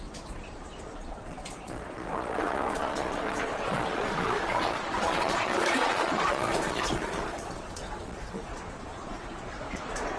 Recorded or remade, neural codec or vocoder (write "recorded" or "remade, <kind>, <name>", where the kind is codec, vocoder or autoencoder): remade, vocoder, Vocos